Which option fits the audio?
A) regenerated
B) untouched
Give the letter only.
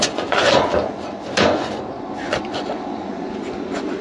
A